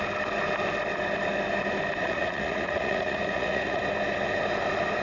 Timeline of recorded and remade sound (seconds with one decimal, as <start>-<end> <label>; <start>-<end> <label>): 0.0-2.0 recorded; 2.0-3.8 remade; 3.8-5.0 recorded